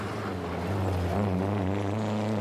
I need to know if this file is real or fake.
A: real